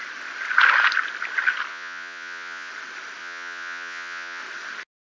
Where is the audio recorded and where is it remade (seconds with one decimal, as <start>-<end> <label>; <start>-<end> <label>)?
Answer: 0.0-1.7 recorded; 1.7-2.7 remade; 2.7-3.2 recorded; 3.2-4.4 remade; 4.4-5.2 recorded